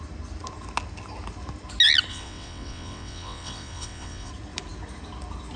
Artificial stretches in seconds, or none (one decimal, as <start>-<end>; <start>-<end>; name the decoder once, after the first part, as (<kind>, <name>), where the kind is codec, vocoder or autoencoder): 2.1-4.3 (vocoder, WaveNeXt)